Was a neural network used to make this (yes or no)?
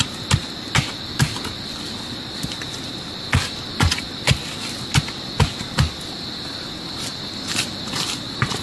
no